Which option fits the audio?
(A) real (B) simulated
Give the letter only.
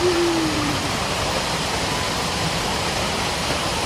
B